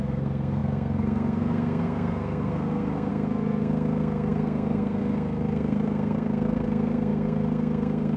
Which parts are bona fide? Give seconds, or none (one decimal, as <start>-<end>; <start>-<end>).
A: none